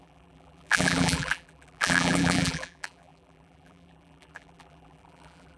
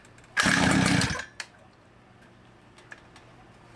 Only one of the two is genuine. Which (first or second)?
second